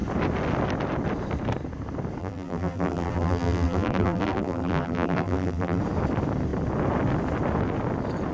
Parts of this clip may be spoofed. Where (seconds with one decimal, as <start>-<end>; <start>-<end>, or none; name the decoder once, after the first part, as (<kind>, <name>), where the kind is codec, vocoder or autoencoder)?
2.2-5.8 (vocoder, BigVGAN v2)